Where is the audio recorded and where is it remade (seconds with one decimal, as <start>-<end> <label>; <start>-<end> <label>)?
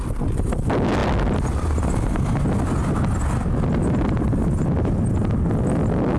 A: 0.0-6.2 remade